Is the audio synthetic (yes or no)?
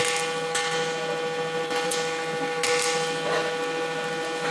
no